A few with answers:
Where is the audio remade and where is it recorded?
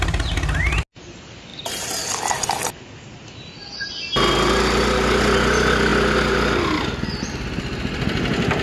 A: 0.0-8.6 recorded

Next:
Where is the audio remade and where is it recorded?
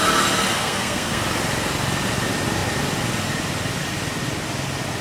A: 0.0-0.5 recorded; 0.5-1.2 remade; 1.2-5.0 recorded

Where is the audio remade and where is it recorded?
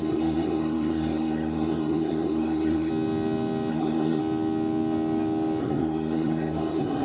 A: 0.0-2.9 remade; 2.9-3.7 recorded; 3.7-4.2 remade; 4.2-5.6 recorded; 5.6-7.0 remade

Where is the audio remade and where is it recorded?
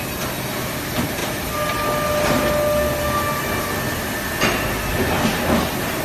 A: 0.0-6.0 recorded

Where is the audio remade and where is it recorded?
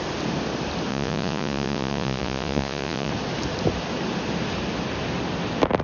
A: 0.0-0.9 recorded; 0.9-3.1 remade; 3.1-5.8 recorded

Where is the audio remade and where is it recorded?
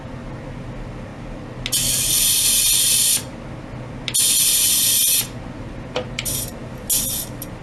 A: 0.0-7.6 recorded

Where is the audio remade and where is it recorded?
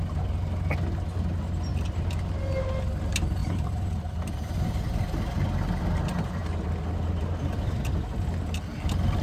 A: 0.0-3.4 recorded; 3.4-4.2 remade; 4.2-9.2 recorded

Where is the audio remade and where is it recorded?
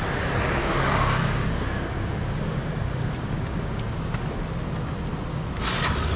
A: 0.0-0.6 recorded; 0.6-3.8 remade; 3.8-6.2 recorded